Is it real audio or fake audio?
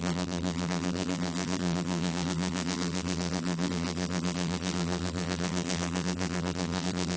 fake